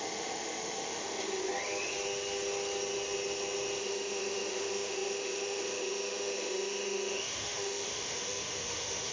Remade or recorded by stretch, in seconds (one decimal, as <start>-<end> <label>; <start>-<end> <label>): 0.0-1.4 remade; 1.4-3.8 recorded; 3.8-9.1 remade